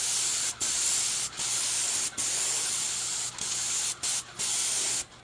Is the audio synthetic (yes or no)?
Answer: no